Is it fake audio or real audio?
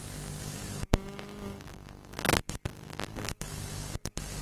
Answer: fake